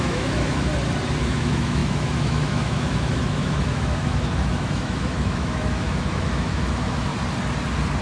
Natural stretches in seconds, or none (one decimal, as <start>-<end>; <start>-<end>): 0.7-1.2; 7.1-8.0